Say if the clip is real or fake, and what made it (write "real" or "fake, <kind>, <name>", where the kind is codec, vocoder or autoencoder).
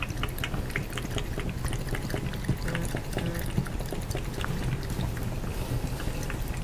real